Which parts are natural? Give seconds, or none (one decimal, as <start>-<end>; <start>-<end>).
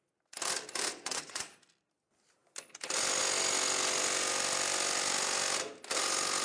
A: 0.0-0.9; 1.5-6.4